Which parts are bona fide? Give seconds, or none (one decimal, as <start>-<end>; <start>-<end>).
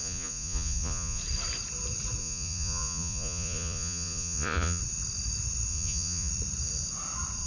1.2-2.2; 4.8-5.7; 6.3-7.5